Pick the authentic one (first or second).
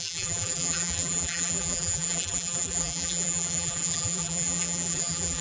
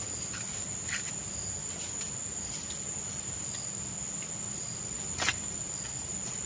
second